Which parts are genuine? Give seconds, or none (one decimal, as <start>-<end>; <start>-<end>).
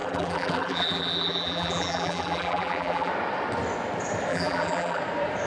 3.1-4.3; 5.0-5.5